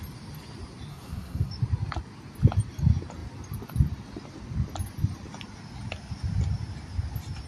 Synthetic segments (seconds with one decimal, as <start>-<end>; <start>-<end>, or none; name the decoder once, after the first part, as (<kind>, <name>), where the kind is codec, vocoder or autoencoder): 0.9-1.5 (codec, SNAC)